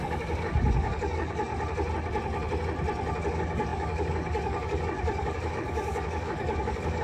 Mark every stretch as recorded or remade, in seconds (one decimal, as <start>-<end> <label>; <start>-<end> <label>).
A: 0.0-1.5 remade; 1.5-3.3 recorded; 3.3-7.0 remade